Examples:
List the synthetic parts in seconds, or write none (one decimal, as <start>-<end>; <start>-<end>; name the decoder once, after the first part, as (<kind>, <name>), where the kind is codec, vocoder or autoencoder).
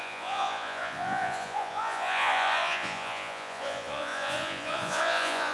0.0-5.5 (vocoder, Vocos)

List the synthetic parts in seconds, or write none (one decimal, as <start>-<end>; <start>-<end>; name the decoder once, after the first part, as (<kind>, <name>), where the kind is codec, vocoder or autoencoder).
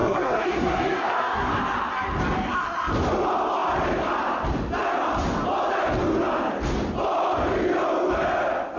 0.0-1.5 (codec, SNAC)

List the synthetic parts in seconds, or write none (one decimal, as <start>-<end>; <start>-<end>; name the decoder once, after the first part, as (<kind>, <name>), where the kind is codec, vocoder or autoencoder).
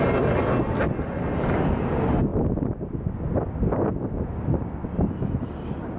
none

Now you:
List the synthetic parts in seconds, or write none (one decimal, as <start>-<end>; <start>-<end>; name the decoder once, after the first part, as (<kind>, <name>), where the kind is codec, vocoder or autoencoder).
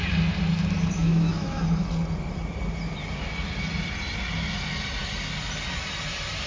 1.0-1.6 (autoencoder, DAC-VAE)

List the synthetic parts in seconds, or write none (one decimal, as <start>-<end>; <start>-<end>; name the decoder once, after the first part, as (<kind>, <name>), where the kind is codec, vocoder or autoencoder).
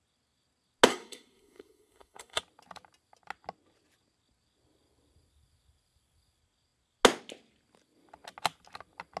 0.9-2.4 (codec, SNAC)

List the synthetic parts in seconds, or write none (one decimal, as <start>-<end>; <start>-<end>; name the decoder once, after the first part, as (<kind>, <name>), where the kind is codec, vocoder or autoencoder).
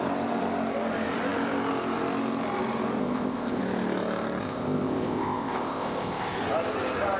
3.0-3.6 (codec, ZipCodec); 4.4-6.4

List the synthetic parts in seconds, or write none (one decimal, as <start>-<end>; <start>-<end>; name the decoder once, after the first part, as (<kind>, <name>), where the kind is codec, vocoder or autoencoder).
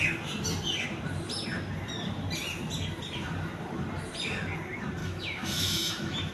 5.0-6.3 (autoencoder, DAC-VAE)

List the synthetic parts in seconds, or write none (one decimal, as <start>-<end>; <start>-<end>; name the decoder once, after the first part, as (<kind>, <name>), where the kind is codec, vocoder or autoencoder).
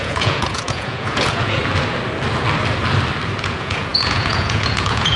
0.0-1.6 (vocoder, Vocos); 3.4-5.2